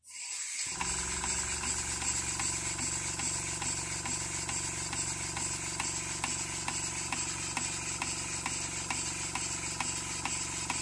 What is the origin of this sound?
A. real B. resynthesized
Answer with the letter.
A